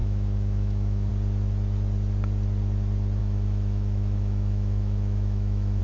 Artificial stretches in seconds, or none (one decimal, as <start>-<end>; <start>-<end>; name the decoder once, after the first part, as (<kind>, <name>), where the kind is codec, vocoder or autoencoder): 0.0-1.1 (autoencoder, DAC-VAE); 3.2-5.8